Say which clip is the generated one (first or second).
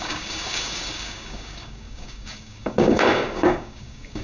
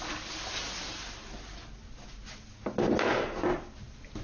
first